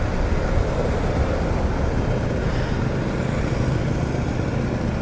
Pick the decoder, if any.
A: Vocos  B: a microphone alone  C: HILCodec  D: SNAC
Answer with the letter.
B